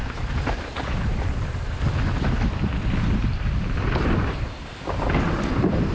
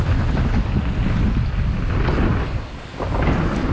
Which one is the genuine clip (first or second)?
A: second